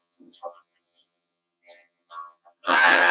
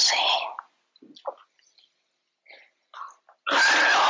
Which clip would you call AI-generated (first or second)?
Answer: first